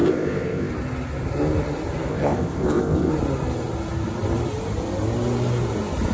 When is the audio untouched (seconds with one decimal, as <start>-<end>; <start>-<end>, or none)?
0.7-2.1; 3.1-6.1